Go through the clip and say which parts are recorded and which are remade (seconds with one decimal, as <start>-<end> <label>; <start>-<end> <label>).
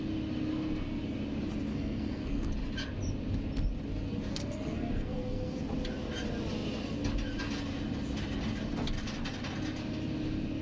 0.0-1.7 recorded; 1.7-2.5 remade; 2.5-4.3 recorded; 4.3-5.6 remade; 5.6-10.6 recorded